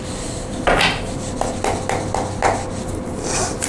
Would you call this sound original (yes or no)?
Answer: yes